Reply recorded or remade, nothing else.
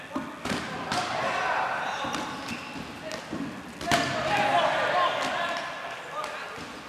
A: recorded